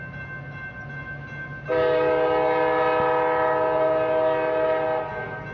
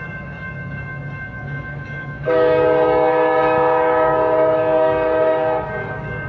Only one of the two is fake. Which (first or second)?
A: second